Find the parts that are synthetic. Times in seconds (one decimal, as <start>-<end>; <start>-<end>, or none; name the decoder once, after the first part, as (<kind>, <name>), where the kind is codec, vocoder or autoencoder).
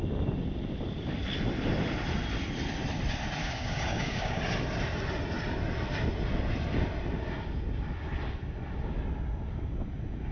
3.4-4.4 (codec, DAC)